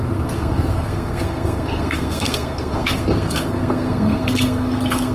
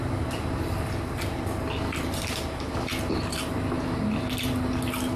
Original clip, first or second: second